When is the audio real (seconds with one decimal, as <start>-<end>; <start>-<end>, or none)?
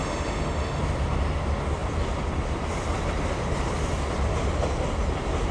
0.8-5.5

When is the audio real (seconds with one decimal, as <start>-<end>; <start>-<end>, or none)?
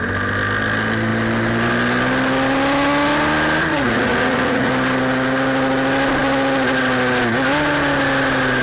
0.0-3.7; 4.7-8.6